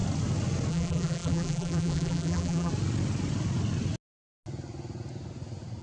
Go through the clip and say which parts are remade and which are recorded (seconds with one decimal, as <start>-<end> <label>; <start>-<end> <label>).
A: 0.0-0.7 recorded; 0.7-2.7 remade; 2.7-5.8 recorded